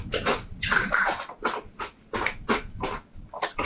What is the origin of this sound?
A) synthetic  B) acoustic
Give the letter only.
B